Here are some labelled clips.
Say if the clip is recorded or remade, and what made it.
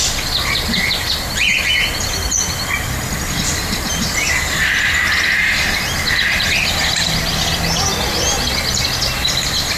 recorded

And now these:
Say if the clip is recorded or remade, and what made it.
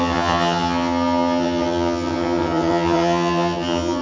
remade, vocoder, HiFi-GAN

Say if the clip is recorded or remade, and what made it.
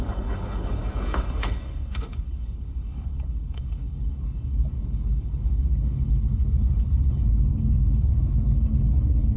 remade, codec, HILCodec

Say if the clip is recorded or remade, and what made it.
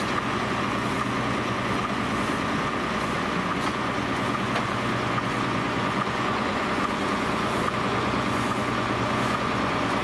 remade, vocoder, Vocos